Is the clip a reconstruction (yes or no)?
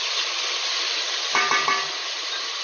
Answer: no